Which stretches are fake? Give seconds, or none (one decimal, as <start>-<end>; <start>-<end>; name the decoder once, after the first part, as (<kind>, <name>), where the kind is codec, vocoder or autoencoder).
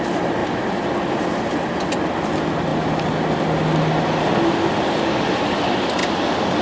none